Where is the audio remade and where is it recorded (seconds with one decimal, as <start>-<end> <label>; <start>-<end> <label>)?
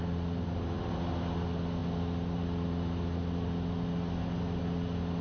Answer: 0.0-5.2 recorded